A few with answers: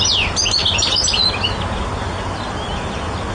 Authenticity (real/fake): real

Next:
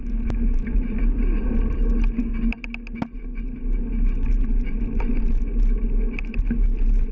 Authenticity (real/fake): real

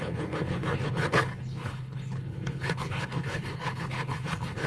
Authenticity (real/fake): fake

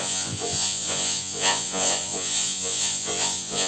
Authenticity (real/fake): fake